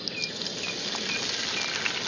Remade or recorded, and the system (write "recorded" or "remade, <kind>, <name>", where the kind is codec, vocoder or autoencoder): recorded